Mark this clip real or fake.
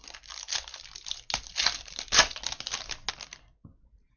real